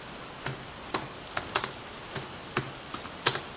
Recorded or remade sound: recorded